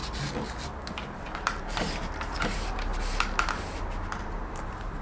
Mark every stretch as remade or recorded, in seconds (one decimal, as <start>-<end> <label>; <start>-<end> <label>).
0.0-0.7 recorded; 0.7-2.9 remade; 2.9-4.2 recorded; 4.2-5.0 remade